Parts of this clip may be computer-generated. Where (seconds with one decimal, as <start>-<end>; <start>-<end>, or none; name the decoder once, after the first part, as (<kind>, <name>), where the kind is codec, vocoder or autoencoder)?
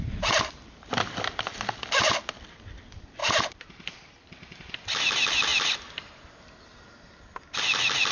none